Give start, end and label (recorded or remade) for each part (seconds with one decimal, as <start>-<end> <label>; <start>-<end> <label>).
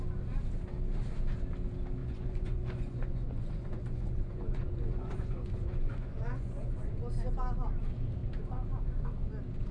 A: 0.0-2.0 recorded; 2.0-6.9 remade; 6.9-9.7 recorded